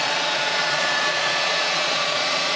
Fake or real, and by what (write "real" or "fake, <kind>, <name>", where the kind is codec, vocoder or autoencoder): fake, vocoder, Vocos